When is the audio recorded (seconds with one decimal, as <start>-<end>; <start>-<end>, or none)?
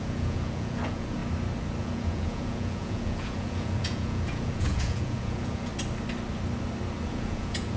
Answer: 1.2-1.8; 5.7-7.1